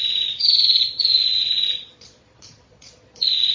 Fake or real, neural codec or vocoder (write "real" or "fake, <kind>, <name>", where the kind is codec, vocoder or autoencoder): fake, vocoder, Vocos